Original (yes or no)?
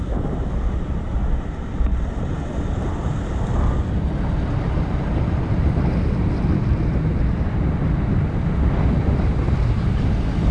yes